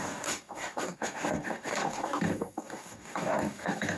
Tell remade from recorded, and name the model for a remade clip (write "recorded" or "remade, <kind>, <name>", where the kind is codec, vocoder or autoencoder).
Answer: remade, codec, DAC